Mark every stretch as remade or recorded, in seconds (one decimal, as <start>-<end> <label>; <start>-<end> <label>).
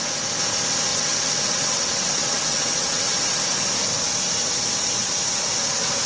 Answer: 0.0-0.9 recorded; 0.9-3.1 remade; 3.1-6.1 recorded